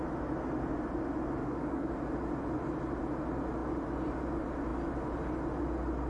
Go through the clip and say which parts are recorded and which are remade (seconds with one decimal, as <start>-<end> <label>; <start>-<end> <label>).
0.0-1.4 recorded; 1.4-1.9 remade; 1.9-6.1 recorded